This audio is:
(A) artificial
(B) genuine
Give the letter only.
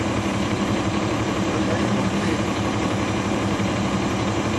A